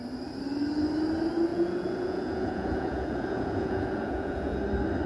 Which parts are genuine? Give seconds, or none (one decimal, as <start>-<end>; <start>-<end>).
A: 0.0-1.5; 4.6-5.1